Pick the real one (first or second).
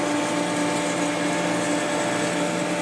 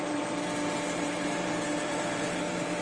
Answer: first